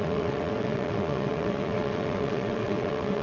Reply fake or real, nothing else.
fake